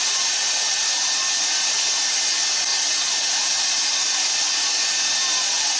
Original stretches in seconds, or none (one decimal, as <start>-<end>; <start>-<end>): 0.0-5.8